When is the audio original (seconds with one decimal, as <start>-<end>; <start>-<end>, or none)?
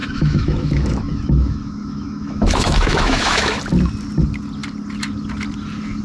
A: 3.6-6.0